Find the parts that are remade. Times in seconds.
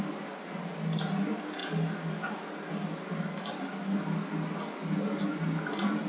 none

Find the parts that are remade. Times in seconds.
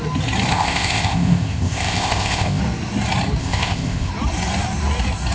0.5-2.6 (codec, ZipCodec); 3.4-4.1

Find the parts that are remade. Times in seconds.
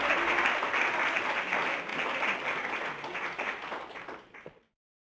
none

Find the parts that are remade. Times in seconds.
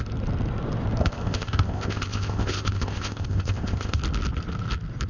1.0-4.0 (codec, ZipCodec)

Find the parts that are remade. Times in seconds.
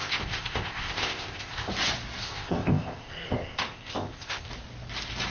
0.0-1.7 (codec, ZipCodec); 2.2-4.5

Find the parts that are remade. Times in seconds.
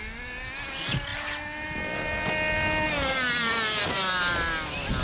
none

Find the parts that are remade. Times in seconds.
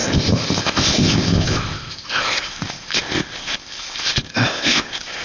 0.0-5.2 (codec, ZipCodec)